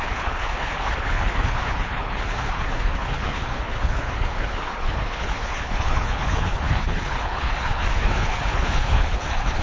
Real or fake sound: fake